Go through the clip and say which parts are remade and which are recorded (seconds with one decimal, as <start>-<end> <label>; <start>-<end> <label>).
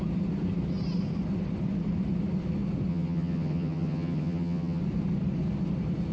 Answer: 0.0-2.9 recorded; 2.9-4.8 remade; 4.8-6.1 recorded